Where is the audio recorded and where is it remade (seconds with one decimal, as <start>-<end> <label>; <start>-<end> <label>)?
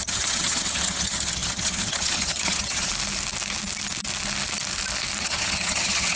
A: 0.0-2.9 remade; 2.9-5.2 recorded; 5.2-6.2 remade